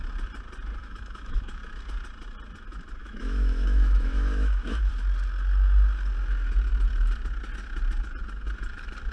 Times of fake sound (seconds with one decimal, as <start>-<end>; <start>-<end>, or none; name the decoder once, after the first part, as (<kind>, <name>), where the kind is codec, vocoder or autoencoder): 0.8-1.6 (autoencoder, DAC-VAE); 3.0-4.9